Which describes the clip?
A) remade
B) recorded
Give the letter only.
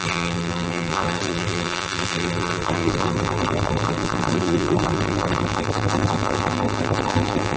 A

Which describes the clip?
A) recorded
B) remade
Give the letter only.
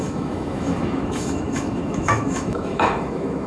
B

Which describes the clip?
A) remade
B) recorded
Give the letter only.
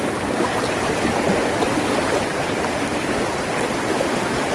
B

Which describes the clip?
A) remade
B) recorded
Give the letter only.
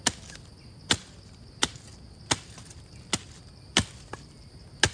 B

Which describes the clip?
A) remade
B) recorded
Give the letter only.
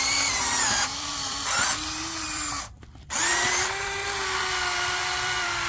A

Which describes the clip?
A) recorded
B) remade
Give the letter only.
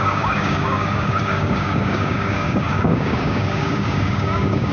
B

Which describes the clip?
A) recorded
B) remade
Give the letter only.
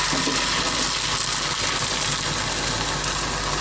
A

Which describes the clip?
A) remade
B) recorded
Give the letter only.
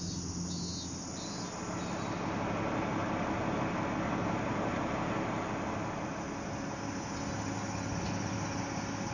B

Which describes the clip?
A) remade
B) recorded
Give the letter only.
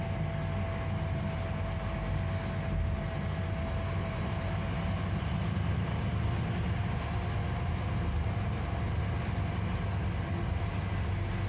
B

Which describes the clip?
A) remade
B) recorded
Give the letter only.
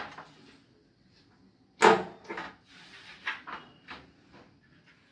B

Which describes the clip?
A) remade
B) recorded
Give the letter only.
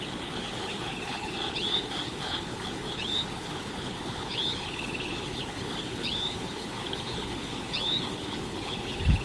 A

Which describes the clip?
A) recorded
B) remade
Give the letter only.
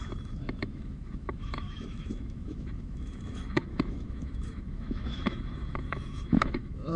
B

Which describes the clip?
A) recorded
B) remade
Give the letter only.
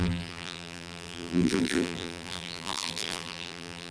B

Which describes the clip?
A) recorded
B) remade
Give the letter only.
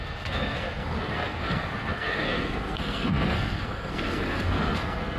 B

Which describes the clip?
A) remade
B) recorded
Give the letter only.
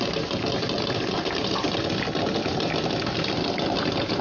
B